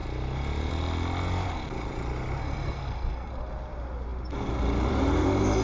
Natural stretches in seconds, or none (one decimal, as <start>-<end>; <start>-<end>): 0.0-2.4; 3.3-5.6